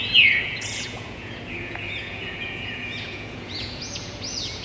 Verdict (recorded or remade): remade